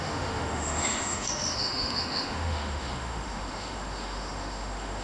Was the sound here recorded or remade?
remade